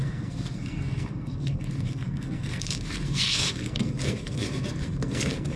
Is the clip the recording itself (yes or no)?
no